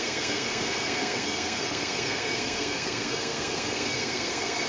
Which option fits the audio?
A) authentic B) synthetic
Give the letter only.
B